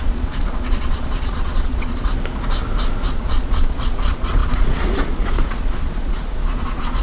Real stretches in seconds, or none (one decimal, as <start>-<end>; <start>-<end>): 2.1-3.1